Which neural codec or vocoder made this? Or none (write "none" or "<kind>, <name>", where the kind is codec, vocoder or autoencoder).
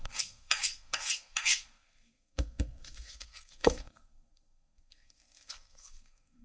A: codec, SNAC